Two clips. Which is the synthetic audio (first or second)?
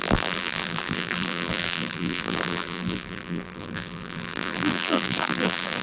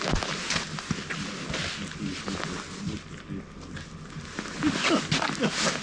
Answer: first